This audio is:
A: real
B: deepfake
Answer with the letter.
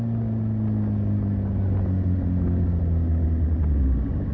A